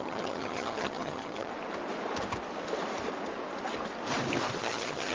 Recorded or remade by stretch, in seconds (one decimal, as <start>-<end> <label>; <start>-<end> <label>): 0.0-1.5 remade; 1.5-4.6 recorded; 4.6-5.1 remade